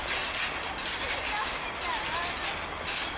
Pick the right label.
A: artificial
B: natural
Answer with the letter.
B